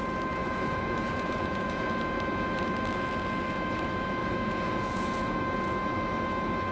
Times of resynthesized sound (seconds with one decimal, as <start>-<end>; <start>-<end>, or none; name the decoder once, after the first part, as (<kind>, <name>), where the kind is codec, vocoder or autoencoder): 0.4-1.9 (vocoder, Vocos); 4.2-5.4